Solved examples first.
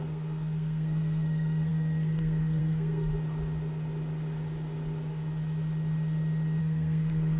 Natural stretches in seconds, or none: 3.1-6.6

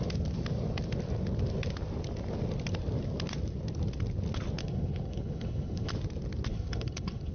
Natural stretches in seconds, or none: 0.0-4.6; 5.9-6.5

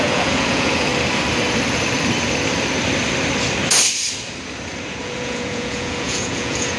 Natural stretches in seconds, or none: 0.9-5.0